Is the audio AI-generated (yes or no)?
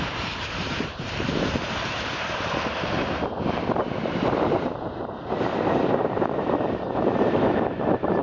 yes